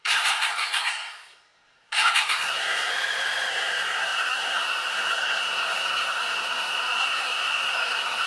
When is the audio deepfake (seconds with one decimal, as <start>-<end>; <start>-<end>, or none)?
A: 0.0-2.9; 3.5-8.3